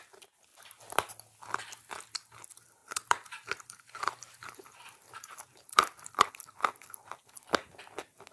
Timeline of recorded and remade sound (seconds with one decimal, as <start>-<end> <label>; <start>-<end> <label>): 0.0-2.8 recorded; 2.8-6.3 remade; 6.3-8.3 recorded